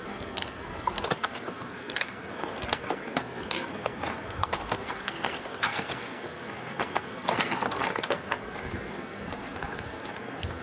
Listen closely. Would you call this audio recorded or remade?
remade